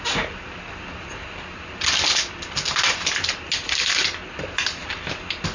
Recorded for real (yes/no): yes